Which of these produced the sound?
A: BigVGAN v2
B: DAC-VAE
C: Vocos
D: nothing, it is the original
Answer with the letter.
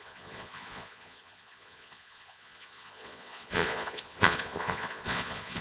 C